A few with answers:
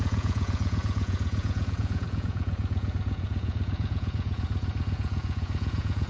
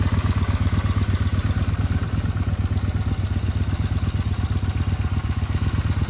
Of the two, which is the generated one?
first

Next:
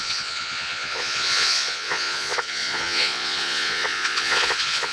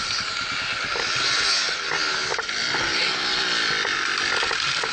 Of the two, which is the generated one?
first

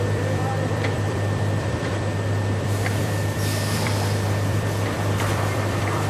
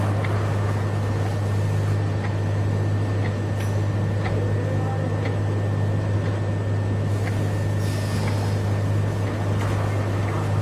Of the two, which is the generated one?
first